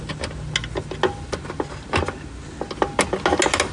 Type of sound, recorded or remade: recorded